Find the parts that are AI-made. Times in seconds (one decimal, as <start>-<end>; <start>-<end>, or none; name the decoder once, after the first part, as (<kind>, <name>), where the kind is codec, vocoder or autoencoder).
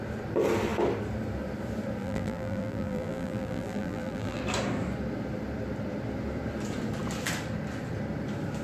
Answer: 2.0-4.4 (vocoder, BigVGAN v2)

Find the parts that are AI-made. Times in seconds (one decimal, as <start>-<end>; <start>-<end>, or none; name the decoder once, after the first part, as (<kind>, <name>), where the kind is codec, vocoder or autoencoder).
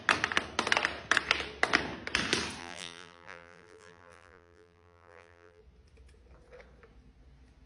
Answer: 2.6-5.6 (vocoder, BigVGAN v2)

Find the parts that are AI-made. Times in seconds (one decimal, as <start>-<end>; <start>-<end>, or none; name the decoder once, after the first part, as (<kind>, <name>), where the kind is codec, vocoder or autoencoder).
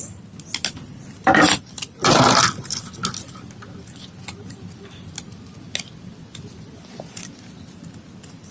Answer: none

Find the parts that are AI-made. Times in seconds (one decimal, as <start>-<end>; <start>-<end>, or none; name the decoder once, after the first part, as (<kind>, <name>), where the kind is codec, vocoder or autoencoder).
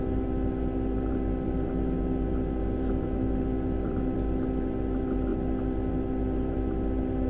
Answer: none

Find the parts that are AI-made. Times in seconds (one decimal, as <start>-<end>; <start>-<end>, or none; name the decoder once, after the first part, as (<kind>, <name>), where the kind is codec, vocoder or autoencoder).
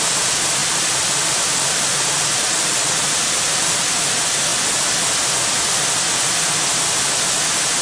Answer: 0.6-3.8 (vocoder, BigVGAN v2)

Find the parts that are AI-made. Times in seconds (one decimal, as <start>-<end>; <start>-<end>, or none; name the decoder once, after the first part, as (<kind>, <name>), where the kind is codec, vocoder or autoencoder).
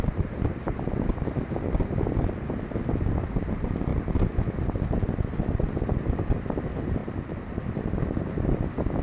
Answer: none